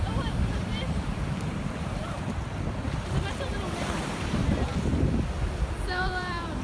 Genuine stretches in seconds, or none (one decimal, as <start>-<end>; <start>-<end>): none